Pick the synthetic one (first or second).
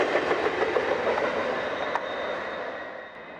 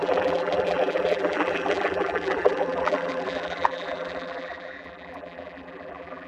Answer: second